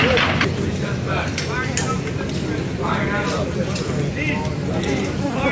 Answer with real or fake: real